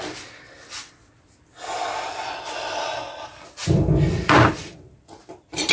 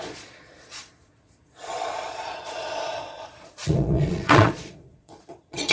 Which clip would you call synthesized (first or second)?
second